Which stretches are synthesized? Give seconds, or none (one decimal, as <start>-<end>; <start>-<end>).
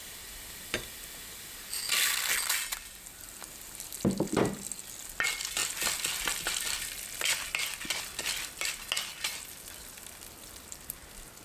none